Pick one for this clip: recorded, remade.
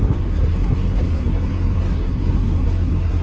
remade